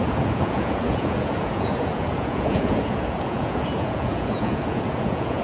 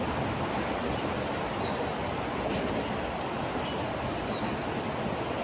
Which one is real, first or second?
second